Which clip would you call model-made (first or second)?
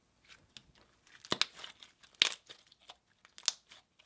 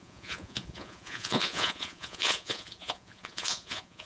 second